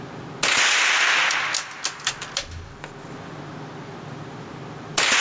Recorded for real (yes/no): yes